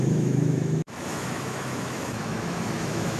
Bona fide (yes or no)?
no